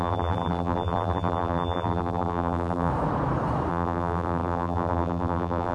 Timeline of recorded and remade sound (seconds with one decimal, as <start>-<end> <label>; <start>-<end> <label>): 0.0-2.9 remade; 2.9-3.7 recorded; 3.7-5.7 remade